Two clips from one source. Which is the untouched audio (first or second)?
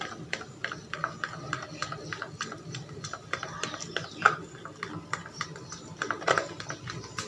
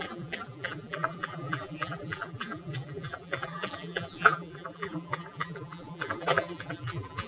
first